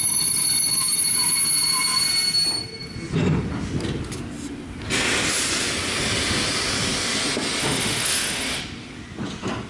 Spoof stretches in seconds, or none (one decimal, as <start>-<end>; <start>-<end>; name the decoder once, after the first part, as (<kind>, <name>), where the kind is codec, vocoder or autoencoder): 7.6-8.6 (autoencoder, DAC-VAE)